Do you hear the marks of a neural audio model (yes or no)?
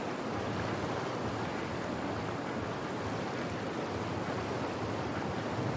no